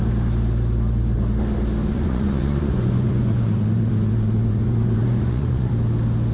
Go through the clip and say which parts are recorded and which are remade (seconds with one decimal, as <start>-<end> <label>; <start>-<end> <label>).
0.0-1.9 recorded; 1.9-5.7 remade; 5.7-6.3 recorded